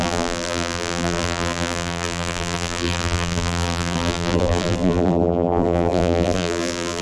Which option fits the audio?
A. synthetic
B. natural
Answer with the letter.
A